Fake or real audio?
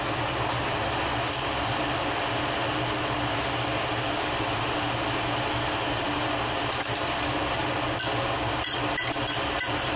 real